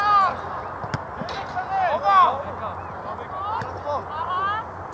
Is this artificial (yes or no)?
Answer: no